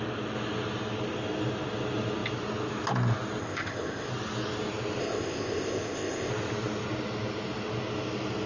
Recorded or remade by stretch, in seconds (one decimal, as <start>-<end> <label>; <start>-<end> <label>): 0.0-3.4 recorded; 3.4-4.1 remade; 4.1-5.0 recorded; 5.0-6.3 remade; 6.3-8.5 recorded

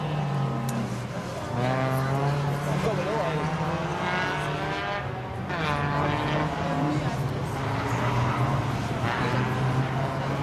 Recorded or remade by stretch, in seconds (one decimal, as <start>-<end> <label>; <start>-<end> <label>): 0.0-10.4 recorded

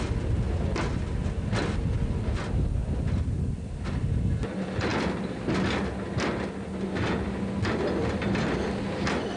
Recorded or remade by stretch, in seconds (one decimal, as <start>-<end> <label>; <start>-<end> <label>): 0.0-9.4 recorded

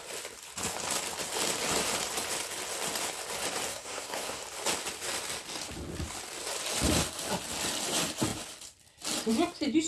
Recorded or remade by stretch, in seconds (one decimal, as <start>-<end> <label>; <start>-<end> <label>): 0.0-3.7 recorded; 3.7-4.4 remade; 4.4-9.9 recorded